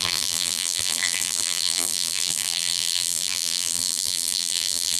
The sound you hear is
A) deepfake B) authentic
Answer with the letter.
A